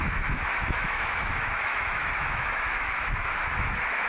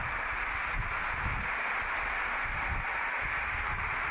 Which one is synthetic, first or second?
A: first